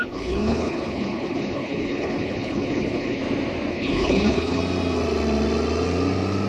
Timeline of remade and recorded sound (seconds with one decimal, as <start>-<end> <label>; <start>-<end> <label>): 0.0-3.2 remade; 3.2-3.7 recorded; 3.7-4.6 remade; 4.6-6.5 recorded